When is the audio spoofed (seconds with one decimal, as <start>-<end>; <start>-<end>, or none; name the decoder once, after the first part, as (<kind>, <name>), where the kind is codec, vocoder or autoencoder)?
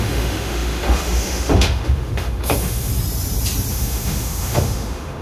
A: 0.0-2.9 (autoencoder, DAC-VAE); 3.7-5.2